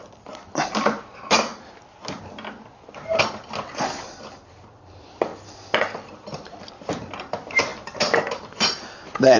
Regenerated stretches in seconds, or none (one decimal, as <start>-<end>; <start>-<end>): 0.0-1.5; 4.8-5.3; 6.9-9.4